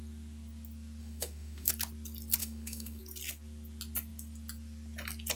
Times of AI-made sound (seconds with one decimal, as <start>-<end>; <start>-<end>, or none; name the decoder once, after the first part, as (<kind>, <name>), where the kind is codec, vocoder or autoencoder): 1.0-1.7 (autoencoder, DAC-VAE); 2.4-3.0

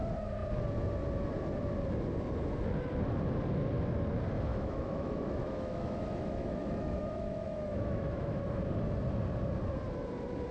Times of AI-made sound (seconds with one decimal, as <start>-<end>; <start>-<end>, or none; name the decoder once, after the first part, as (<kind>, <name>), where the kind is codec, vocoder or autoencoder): 4.5-8.6 (autoencoder, DAC-VAE)

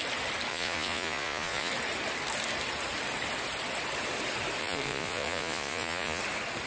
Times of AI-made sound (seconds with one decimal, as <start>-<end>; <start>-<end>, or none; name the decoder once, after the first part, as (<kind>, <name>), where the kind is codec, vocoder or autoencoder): 0.5-1.7 (vocoder, Vocos); 4.6-6.2

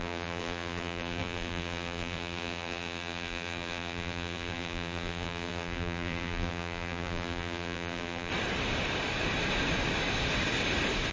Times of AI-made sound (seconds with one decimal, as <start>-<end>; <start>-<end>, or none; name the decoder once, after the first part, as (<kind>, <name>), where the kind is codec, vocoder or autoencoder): 0.0-8.3 (vocoder, BigVGAN v2)

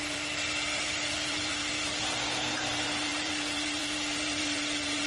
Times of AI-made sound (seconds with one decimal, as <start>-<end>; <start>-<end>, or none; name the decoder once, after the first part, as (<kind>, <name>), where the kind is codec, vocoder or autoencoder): 0.0-5.1 (vocoder, BigVGAN v2)